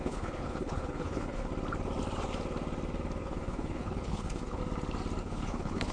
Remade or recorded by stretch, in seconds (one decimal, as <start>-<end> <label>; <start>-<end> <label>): 0.0-1.5 remade; 1.5-3.2 recorded; 3.2-4.6 remade; 4.6-5.2 recorded; 5.2-5.9 remade